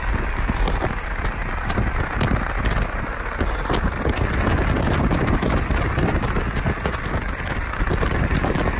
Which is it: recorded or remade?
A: recorded